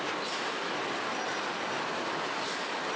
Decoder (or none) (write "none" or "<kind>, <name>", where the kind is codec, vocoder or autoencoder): none